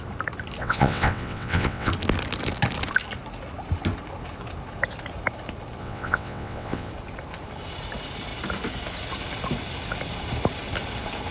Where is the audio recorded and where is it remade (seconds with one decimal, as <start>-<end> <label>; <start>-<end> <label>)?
0.0-0.6 recorded; 0.6-1.9 remade; 1.9-5.8 recorded; 5.8-6.9 remade; 6.9-11.3 recorded